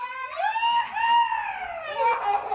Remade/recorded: recorded